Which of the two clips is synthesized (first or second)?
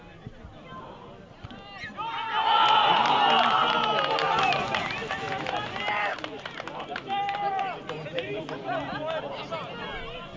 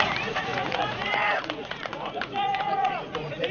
second